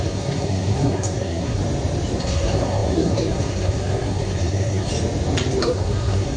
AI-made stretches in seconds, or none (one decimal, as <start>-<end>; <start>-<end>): 0.0-1.6; 2.2-4.9; 5.6-6.4